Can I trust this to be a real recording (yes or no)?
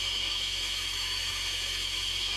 no